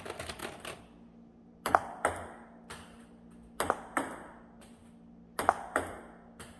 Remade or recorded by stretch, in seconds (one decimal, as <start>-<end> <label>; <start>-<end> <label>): 0.0-6.6 recorded